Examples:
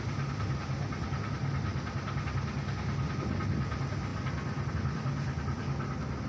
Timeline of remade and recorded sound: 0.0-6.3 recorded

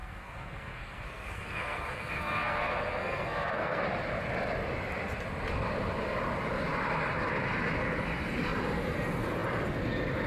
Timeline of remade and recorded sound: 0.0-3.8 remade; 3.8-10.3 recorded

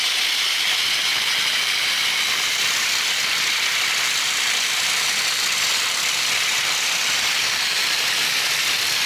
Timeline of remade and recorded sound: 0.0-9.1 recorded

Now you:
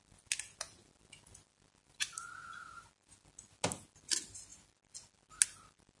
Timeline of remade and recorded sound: 0.0-6.0 recorded